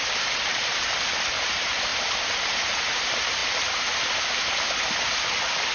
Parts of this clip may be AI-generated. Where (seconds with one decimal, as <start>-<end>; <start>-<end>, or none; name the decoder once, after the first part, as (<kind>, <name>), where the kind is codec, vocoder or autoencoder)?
none